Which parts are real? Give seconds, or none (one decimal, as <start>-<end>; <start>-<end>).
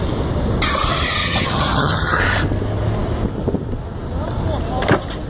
0.0-1.2; 2.2-5.3